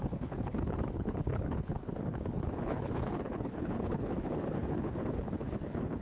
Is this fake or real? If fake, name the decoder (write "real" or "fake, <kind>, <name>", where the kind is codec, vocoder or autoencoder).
fake, codec, HILCodec